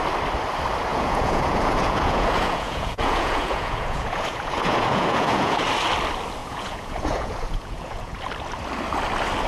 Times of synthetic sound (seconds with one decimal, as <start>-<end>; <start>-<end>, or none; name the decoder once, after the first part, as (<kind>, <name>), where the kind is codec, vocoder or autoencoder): 0.9-5.6 (vocoder, Vocos); 6.4-8.2